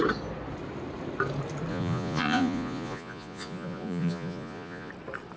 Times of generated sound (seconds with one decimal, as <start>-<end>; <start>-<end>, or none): 1.7-4.9